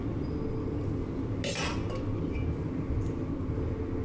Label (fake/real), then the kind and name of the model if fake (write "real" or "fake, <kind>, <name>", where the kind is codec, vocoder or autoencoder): real